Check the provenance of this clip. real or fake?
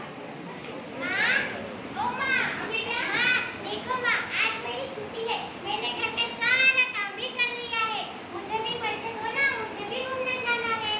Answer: real